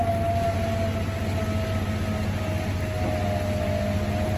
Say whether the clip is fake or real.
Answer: real